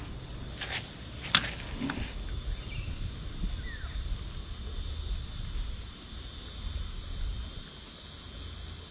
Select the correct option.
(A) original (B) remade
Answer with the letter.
A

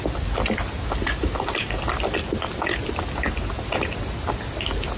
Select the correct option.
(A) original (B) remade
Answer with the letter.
A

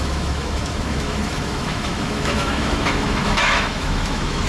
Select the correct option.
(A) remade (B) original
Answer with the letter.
A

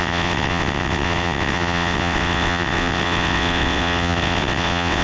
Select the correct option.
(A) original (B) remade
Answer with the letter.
B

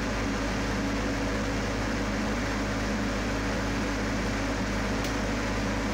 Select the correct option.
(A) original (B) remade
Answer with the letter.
A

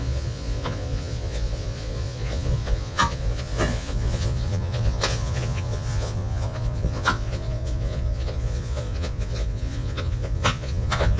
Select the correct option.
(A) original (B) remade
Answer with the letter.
B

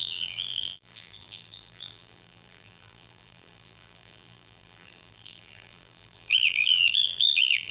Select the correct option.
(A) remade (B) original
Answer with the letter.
A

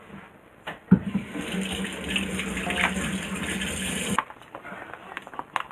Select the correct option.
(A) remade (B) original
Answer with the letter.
B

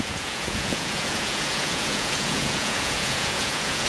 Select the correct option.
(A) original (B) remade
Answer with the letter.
B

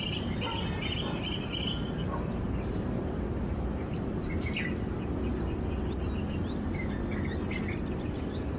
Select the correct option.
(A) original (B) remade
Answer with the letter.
A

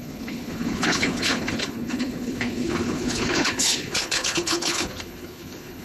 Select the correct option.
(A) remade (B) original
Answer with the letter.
A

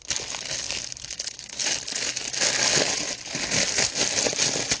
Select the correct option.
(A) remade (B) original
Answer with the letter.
B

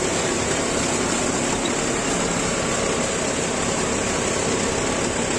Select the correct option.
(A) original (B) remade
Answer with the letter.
A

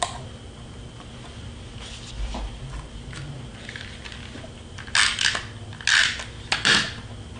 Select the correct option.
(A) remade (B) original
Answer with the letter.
B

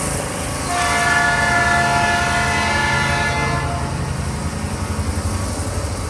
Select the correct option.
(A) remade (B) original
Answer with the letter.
B